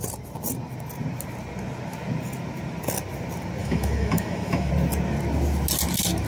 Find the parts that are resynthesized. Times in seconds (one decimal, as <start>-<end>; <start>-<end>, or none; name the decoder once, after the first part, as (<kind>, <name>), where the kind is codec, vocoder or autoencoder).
3.6-4.7 (autoencoder, DAC-VAE)